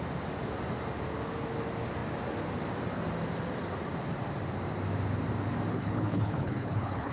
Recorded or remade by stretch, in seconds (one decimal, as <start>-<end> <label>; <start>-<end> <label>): 0.0-5.7 recorded; 5.7-7.1 remade